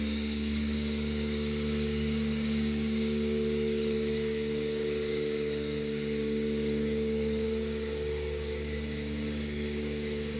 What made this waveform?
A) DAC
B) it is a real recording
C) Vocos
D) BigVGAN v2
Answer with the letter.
A